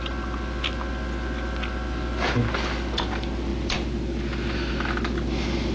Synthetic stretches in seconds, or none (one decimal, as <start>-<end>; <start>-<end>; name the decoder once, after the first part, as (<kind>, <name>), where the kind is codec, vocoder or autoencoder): none